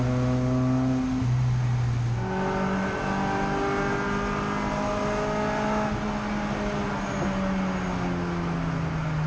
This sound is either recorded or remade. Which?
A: recorded